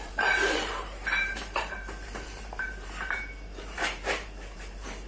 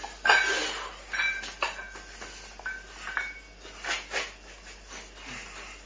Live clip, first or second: second